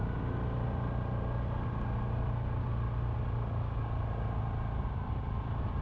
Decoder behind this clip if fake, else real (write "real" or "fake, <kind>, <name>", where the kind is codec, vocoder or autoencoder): real